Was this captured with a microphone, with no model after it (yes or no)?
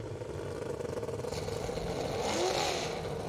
yes